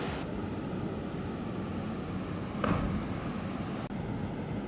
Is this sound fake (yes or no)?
no